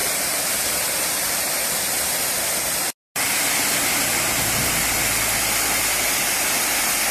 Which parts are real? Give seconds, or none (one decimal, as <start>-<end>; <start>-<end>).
0.0-7.1